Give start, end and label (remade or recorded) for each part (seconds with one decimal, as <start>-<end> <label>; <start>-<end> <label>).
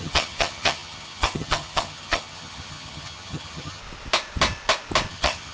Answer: 0.0-3.8 remade; 3.8-5.1 recorded; 5.1-5.5 remade